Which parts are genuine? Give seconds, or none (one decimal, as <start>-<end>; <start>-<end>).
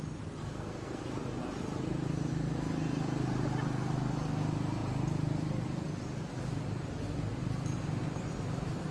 0.0-0.4; 1.0-8.9